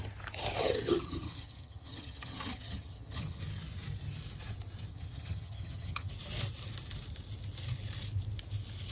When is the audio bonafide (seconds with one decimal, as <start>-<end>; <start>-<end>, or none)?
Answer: 0.0-0.6; 3.4-4.9; 6.1-8.9